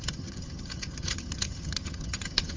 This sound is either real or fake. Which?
fake